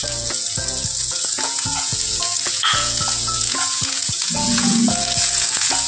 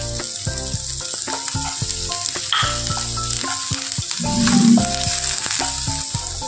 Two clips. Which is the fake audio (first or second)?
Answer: first